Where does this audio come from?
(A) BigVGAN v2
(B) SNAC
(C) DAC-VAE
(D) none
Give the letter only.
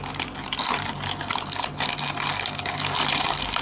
D